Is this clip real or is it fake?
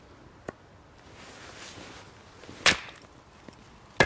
real